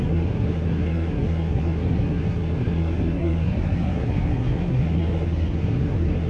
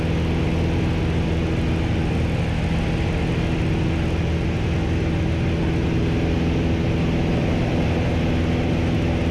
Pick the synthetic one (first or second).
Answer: first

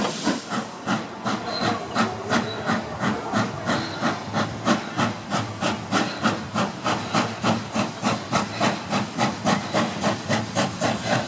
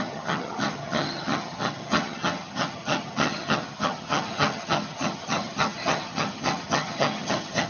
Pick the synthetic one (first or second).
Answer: second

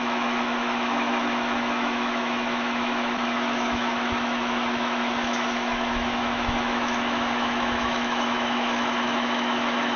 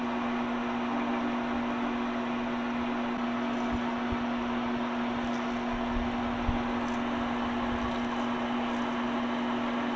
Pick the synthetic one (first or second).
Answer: first